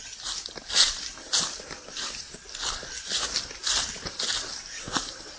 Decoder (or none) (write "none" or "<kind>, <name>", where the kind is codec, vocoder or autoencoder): none